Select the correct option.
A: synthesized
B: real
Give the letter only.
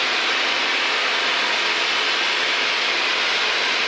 B